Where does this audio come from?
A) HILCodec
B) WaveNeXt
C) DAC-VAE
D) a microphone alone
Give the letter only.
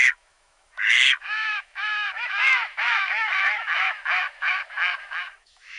C